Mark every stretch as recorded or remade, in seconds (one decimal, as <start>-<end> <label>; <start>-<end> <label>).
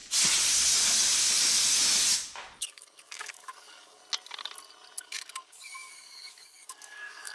0.0-2.6 recorded; 2.6-4.0 remade; 4.0-5.0 recorded; 5.0-7.3 remade